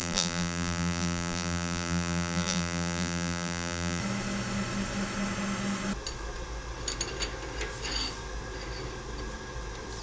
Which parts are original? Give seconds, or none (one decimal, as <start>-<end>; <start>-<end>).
4.0-10.0